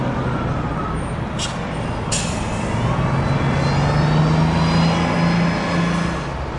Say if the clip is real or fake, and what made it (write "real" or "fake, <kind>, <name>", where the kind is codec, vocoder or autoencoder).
real